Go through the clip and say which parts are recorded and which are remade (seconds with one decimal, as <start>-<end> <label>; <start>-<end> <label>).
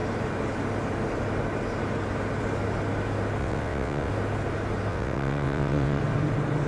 0.0-3.4 recorded; 3.4-4.1 remade; 4.1-4.9 recorded; 4.9-6.0 remade; 6.0-6.7 recorded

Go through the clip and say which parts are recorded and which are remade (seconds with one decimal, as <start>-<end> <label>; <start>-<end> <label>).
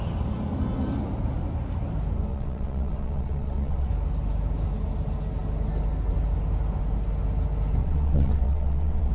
0.0-2.3 recorded; 2.3-3.9 remade; 3.9-7.8 recorded; 7.8-9.1 remade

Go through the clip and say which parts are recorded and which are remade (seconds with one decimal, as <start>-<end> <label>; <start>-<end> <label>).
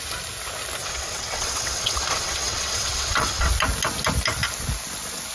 0.0-0.8 recorded; 0.8-3.5 remade; 3.5-5.3 recorded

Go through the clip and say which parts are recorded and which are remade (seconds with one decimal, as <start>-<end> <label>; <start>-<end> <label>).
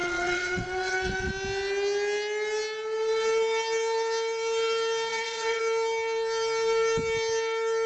0.0-1.3 remade; 1.3-5.1 recorded; 5.1-5.6 remade; 5.6-7.9 recorded